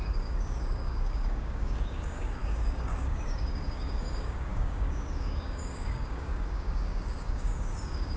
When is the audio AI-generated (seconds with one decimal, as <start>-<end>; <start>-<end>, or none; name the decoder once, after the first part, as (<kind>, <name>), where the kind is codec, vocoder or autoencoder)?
0.0-8.2 (codec, DAC)